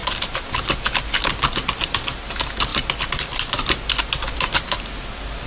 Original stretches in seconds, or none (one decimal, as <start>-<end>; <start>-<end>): 0.0-5.5